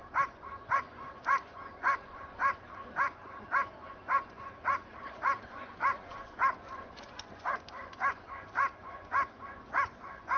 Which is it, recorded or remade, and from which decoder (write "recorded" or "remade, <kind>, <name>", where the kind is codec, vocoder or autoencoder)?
remade, vocoder, Vocos